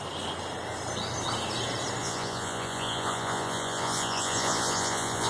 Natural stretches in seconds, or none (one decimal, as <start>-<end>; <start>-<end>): 0.0-2.0